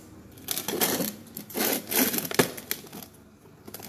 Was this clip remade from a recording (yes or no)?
no